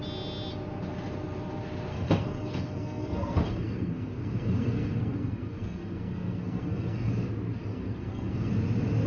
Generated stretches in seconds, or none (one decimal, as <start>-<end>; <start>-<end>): 1.9-7.1; 7.7-8.5